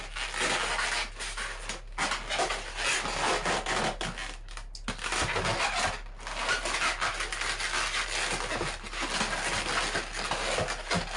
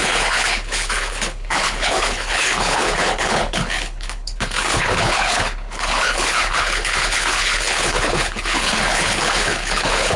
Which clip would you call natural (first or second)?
first